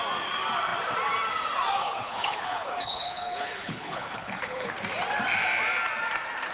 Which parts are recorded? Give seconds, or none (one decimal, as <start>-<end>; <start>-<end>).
0.0-1.8; 4.7-6.5